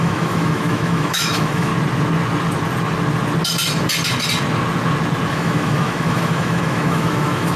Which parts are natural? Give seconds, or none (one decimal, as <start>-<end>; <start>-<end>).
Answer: 1.7-5.3